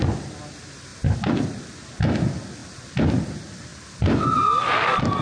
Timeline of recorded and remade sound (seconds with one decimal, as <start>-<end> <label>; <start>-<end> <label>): 0.0-5.2 recorded